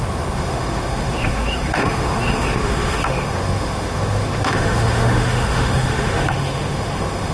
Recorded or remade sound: remade